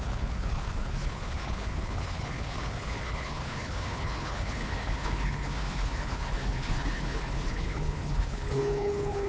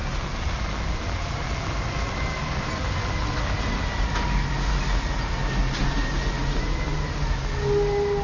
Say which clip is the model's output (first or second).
first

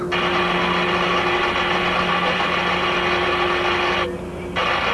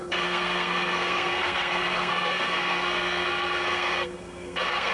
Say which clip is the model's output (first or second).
second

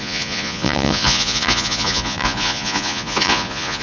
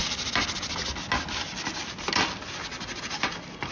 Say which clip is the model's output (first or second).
first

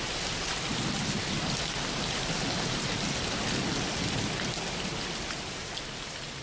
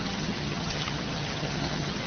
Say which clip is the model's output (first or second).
second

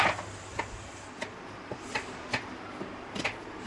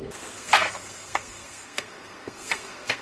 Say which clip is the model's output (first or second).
second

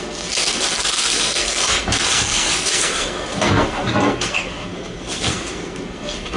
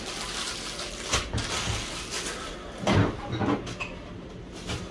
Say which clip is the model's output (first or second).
first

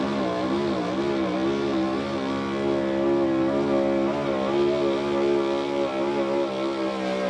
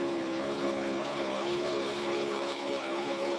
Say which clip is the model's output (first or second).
second